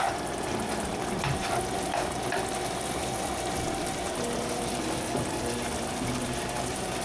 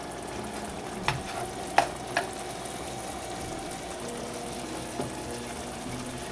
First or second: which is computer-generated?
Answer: first